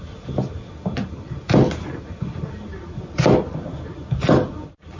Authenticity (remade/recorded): recorded